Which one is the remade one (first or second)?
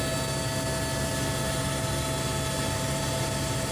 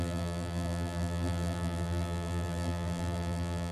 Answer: second